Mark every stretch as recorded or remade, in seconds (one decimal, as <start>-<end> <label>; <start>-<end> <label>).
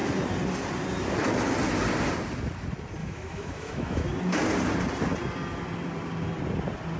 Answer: 0.0-3.0 recorded; 3.0-4.1 remade; 4.1-7.0 recorded